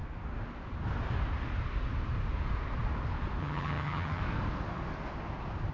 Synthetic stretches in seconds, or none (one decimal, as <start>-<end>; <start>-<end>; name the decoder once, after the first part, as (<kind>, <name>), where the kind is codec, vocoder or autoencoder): 3.4-4.2 (vocoder, HiFi-GAN)